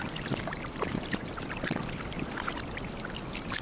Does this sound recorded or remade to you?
recorded